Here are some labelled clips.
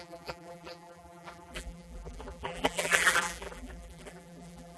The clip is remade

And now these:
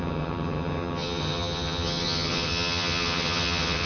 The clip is remade